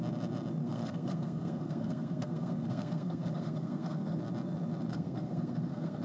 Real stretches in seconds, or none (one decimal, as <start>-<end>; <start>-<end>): 0.0-0.6; 4.2-4.9